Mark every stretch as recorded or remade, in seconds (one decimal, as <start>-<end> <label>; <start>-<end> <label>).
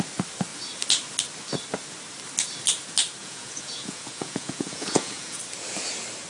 0.0-3.2 recorded; 3.2-5.4 remade; 5.4-6.3 recorded